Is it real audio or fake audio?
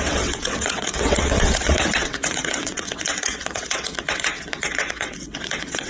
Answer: fake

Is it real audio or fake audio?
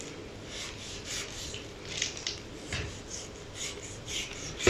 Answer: real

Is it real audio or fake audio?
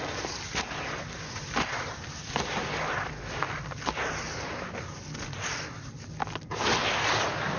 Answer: real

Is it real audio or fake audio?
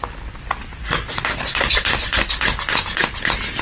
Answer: real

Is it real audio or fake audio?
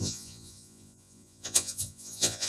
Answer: fake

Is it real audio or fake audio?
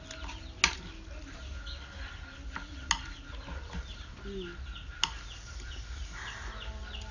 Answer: real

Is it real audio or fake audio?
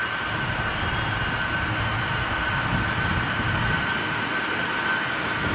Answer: real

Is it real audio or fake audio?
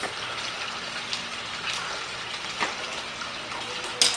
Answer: real